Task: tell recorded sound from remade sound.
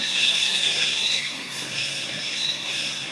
remade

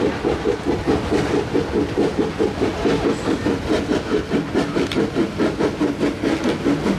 recorded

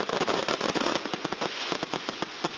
remade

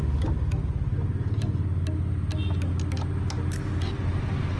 recorded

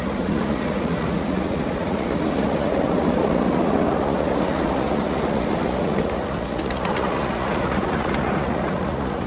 remade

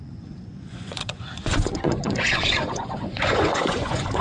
remade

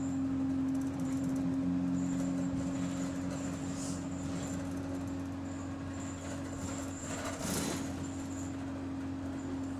recorded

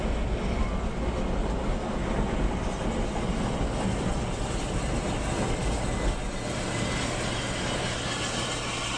recorded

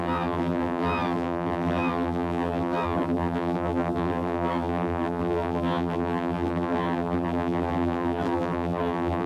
remade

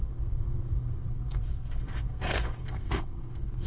remade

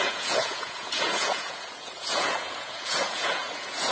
remade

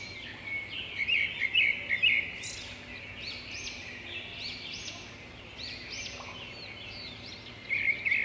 recorded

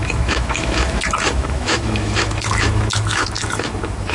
remade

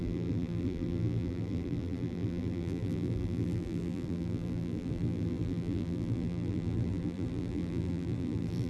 remade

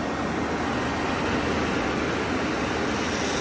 recorded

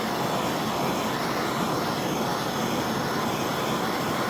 recorded